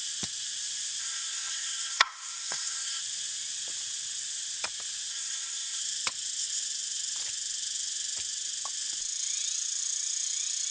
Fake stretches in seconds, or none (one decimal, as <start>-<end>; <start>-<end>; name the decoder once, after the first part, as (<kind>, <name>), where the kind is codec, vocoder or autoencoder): 1.0-3.0 (codec, SNAC); 5.1-5.8